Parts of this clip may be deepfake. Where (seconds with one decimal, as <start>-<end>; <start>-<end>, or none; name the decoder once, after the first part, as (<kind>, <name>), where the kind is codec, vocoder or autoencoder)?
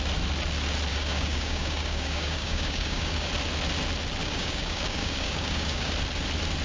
0.9-3.3 (codec, DAC); 4.2-5.9